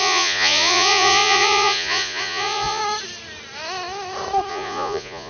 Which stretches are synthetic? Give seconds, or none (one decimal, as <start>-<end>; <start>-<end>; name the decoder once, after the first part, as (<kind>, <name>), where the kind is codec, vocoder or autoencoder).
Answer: 0.0-2.8 (vocoder, Vocos); 4.5-5.3

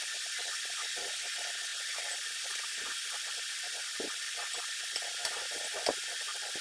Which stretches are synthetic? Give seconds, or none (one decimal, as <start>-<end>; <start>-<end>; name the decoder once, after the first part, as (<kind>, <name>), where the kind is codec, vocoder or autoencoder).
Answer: none

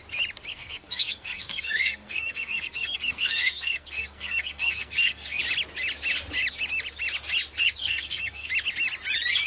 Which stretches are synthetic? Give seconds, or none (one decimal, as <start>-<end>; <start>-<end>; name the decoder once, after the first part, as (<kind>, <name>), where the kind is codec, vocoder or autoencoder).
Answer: 0.5-5.4 (codec, SNAC); 7.8-8.5

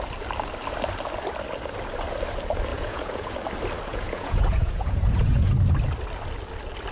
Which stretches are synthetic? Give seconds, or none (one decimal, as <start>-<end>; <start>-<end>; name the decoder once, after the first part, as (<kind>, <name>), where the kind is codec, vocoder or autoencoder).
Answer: 2.7-3.3 (vocoder, Vocos); 3.9-5.5

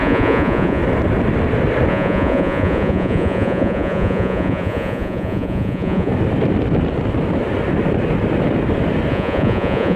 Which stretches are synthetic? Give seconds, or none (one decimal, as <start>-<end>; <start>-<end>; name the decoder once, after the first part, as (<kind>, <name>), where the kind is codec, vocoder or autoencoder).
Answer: 0.0-0.8 (vocoder, Vocos); 1.9-6.1; 9.1-10.0

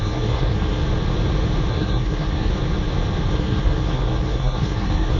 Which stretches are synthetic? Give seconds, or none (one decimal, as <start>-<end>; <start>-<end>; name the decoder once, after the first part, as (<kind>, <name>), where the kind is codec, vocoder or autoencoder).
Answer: 0.0-0.8 (codec, SNAC); 1.7-2.5; 3.3-5.2

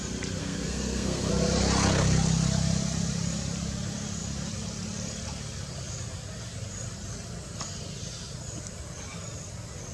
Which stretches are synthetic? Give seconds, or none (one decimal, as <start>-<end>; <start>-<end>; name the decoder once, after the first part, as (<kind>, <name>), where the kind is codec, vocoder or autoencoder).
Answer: 0.4-1.3 (codec, SNAC)

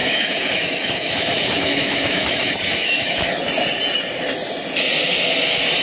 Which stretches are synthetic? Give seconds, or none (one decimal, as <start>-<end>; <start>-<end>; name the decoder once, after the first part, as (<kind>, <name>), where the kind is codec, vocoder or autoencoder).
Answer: 0.0-3.4 (autoencoder, DAC-VAE)